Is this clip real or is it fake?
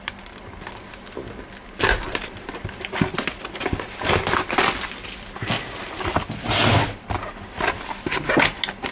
real